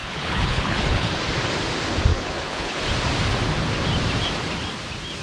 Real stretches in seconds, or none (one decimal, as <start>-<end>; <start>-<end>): 1.1-2.1; 2.8-5.2